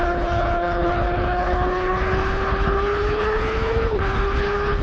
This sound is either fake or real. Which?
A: fake